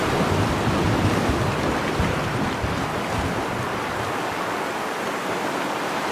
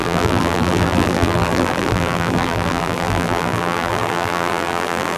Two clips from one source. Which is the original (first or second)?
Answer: first